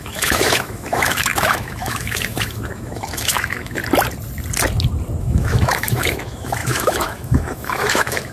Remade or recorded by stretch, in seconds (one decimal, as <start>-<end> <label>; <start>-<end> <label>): 0.0-3.8 remade; 3.8-5.2 recorded; 5.2-8.3 remade